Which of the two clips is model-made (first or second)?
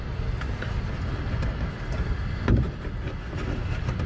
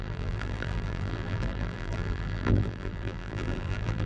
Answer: second